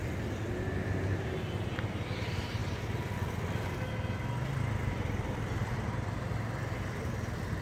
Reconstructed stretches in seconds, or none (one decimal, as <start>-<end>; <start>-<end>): none